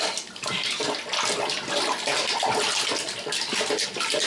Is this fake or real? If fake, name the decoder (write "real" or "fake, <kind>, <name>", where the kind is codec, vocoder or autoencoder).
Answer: real